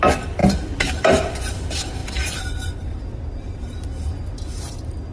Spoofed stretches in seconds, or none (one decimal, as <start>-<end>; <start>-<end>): none